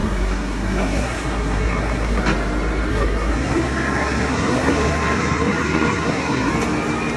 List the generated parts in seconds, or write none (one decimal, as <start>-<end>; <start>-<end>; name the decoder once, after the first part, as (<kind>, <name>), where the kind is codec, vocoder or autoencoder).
0.0-2.2 (codec, SNAC); 2.9-6.5